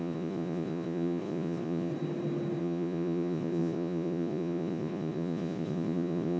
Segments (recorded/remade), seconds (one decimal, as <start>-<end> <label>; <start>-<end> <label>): 0.0-1.9 remade; 1.9-2.6 recorded; 2.6-6.4 remade

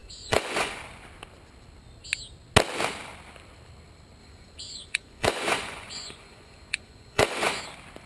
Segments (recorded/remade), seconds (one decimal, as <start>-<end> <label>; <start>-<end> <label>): 0.0-0.8 remade; 0.8-4.2 recorded; 4.2-7.6 remade; 7.6-8.1 recorded

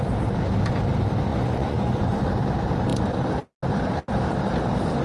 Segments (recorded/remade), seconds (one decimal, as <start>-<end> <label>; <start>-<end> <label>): 0.0-1.3 recorded; 1.3-2.2 remade; 2.2-5.0 recorded

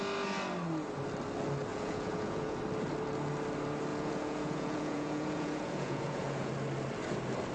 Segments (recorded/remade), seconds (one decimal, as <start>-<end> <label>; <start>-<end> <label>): 0.0-1.7 recorded; 1.7-2.6 remade; 2.6-3.9 recorded; 3.9-6.5 remade; 6.5-7.5 recorded

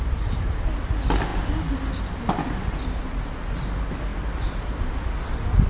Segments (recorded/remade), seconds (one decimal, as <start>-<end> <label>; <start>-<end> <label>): 0.0-5.7 recorded

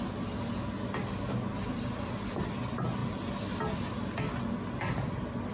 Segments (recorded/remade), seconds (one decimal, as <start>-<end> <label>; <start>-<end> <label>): 0.0-5.5 recorded

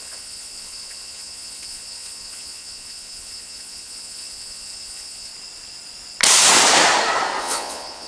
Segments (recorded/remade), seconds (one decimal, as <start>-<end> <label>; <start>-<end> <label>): 0.0-5.3 remade; 5.3-7.4 recorded; 7.4-8.1 remade

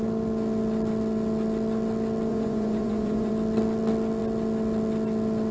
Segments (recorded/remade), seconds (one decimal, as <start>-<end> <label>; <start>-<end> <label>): 0.0-2.3 recorded; 2.3-3.3 remade; 3.3-5.5 recorded